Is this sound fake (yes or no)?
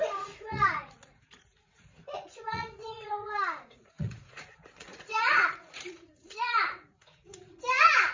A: yes